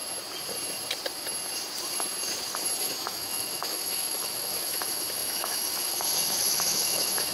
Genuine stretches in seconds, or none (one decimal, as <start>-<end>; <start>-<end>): 0.0-2.8